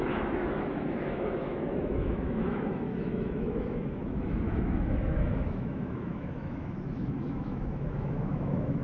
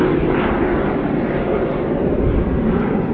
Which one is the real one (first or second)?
second